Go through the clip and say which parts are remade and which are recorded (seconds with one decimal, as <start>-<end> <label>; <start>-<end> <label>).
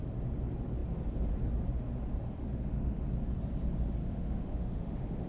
0.0-2.4 recorded; 2.4-3.0 remade; 3.0-4.0 recorded; 4.0-5.3 remade